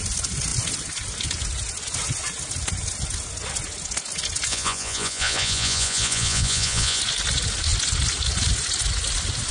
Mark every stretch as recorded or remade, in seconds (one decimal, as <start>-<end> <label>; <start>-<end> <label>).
0.0-4.5 recorded; 4.5-7.0 remade; 7.0-9.5 recorded